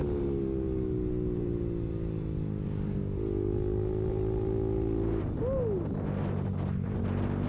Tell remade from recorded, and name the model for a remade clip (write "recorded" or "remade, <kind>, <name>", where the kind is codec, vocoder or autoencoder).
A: recorded